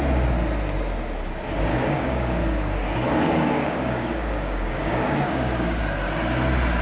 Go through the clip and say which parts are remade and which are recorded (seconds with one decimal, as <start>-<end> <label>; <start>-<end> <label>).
0.0-1.7 recorded; 1.7-5.8 remade; 5.8-6.8 recorded